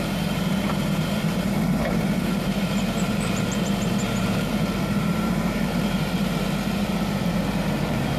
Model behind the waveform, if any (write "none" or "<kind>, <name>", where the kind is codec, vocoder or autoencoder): vocoder, BigVGAN v2